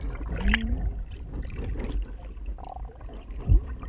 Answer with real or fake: real